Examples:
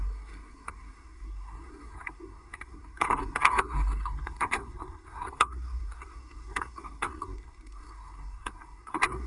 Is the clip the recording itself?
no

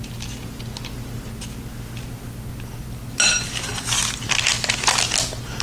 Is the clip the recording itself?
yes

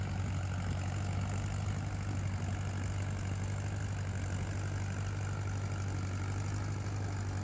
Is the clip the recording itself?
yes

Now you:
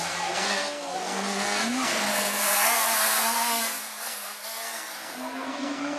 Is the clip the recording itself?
no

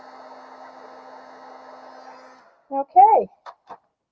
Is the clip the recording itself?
yes